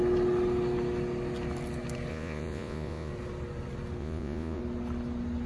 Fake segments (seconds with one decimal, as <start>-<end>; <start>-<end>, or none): 2.1-3.1; 4.0-4.6